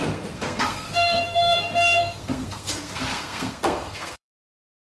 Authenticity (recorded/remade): remade